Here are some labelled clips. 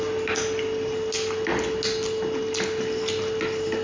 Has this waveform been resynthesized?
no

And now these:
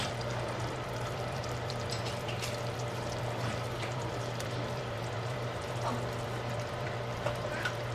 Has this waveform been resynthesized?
yes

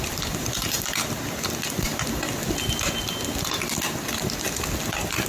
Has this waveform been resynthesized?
no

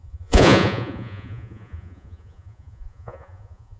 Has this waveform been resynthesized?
yes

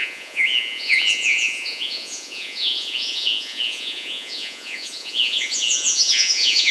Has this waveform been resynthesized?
yes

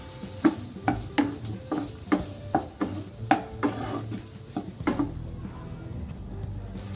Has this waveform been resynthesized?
no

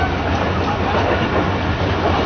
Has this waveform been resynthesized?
no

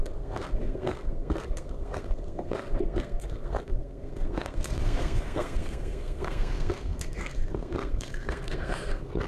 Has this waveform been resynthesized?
yes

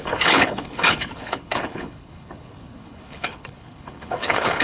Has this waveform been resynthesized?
yes